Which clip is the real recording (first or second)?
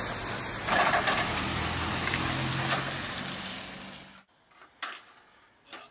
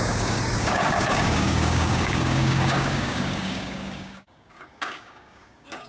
first